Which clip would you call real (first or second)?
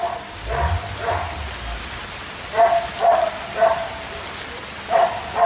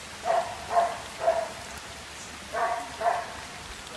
first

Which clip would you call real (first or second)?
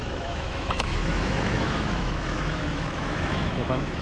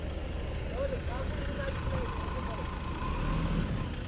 second